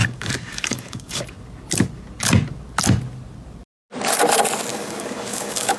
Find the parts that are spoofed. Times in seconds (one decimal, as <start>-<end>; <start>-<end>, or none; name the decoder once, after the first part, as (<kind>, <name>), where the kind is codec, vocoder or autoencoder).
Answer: 0.0-1.2 (codec, DAC); 4.7-5.8